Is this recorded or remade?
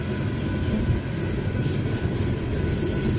recorded